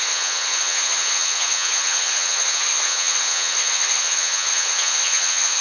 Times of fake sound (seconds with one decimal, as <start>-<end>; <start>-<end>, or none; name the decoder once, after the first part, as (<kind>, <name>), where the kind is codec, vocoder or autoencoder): 0.0-5.6 (vocoder, HiFi-GAN)